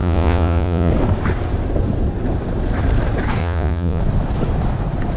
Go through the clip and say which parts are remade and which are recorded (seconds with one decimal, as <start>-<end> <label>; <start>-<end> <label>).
0.0-0.9 remade; 0.9-3.4 recorded; 3.4-4.0 remade; 4.0-5.2 recorded